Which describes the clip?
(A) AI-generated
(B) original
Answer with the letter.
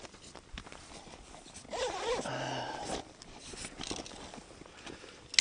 B